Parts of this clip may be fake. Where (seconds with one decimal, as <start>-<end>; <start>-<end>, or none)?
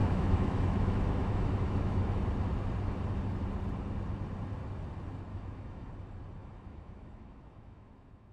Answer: 0.0-2.2; 5.3-5.9; 6.4-8.3